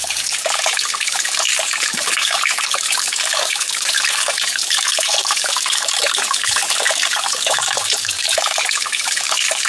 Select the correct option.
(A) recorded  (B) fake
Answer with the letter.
B